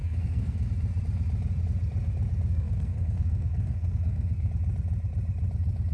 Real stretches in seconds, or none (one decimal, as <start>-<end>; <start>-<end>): 0.7-2.5; 4.5-5.9